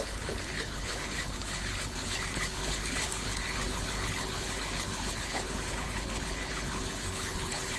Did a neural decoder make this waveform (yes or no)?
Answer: yes